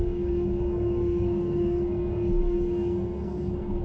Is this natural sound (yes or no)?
no